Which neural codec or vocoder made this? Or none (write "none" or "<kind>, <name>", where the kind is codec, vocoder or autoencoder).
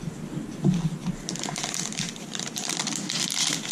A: none